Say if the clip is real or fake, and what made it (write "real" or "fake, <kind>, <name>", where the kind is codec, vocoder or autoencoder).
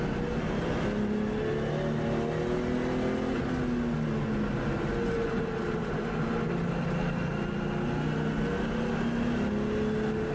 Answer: real